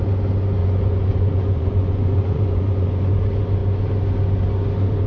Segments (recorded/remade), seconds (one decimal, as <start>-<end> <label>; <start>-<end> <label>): 0.0-0.6 recorded; 0.6-3.1 remade; 3.1-5.1 recorded